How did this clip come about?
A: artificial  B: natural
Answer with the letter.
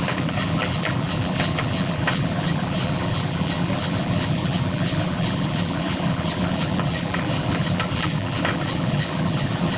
A